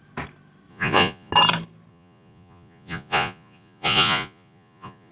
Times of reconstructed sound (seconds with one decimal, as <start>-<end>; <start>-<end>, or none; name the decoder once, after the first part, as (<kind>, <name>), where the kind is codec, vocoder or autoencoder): 0.7-1.3 (vocoder, Vocos); 1.9-5.1